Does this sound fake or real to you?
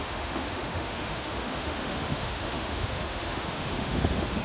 fake